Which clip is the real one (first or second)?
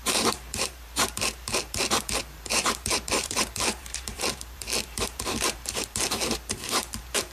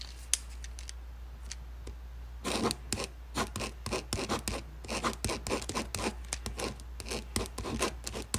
second